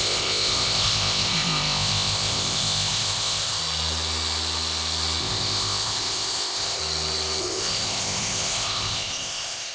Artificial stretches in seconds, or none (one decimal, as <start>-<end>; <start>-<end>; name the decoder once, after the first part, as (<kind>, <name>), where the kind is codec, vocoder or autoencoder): 0.0-3.6 (codec, ZipCodec); 5.2-6.8; 7.4-9.7